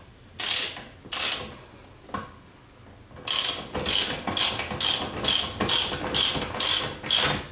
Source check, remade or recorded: recorded